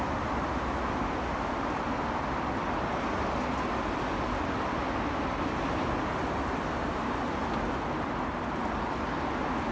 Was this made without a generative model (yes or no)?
yes